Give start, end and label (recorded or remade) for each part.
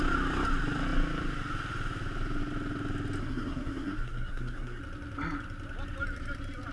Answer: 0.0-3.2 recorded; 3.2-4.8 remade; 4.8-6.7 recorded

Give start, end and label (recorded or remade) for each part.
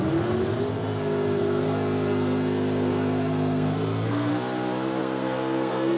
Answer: 0.0-0.7 recorded; 0.7-4.3 remade; 4.3-5.0 recorded; 5.0-6.0 remade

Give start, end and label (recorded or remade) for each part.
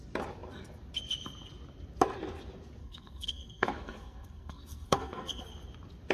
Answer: 0.0-2.8 recorded; 2.8-5.4 remade; 5.4-6.1 recorded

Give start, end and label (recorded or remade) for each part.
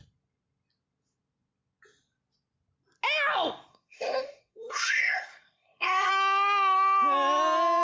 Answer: 0.0-3.7 recorded; 3.7-6.1 remade; 6.1-7.8 recorded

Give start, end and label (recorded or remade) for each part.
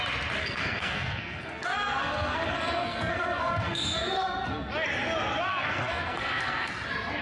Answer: 0.0-0.4 recorded; 0.4-4.7 remade; 4.7-5.5 recorded; 5.5-6.7 remade; 6.7-7.2 recorded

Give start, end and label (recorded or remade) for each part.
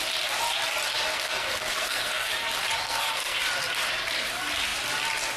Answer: 0.0-1.1 recorded; 1.1-2.3 remade; 2.3-2.8 recorded; 2.8-3.4 remade; 3.4-5.4 recorded